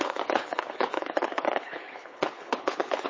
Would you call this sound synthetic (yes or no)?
yes